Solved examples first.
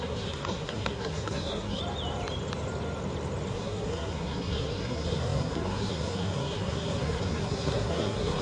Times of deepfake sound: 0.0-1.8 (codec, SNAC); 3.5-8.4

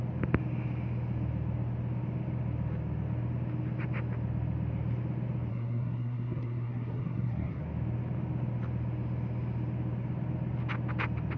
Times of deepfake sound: 5.5-7.6 (codec, SNAC)